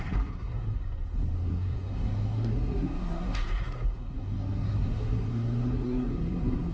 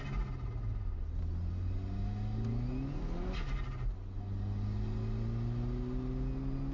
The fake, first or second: first